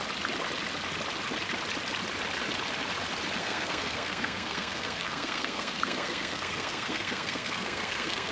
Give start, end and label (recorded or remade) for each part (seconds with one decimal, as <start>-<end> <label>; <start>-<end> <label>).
0.0-3.4 recorded; 3.4-8.3 remade